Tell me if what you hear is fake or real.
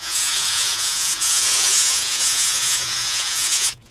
fake